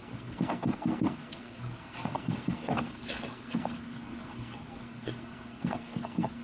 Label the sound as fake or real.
fake